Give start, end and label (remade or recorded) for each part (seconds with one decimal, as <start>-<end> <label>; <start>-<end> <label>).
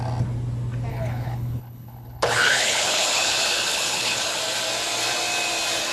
0.0-0.9 recorded; 0.9-4.4 remade; 4.4-5.9 recorded